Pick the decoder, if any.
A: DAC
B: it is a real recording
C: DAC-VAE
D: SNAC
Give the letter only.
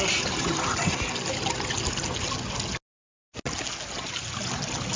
B